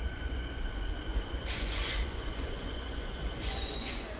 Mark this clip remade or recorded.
remade